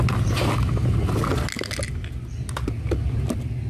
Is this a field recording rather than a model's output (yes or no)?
yes